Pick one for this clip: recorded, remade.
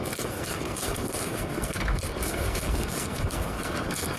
remade